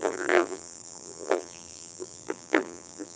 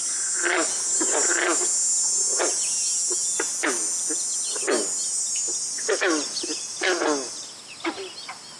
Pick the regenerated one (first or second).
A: first